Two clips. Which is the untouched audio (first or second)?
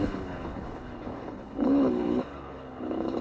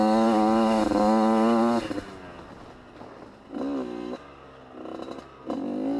second